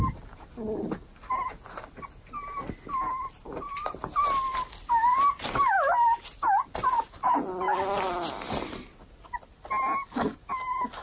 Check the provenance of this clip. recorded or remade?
recorded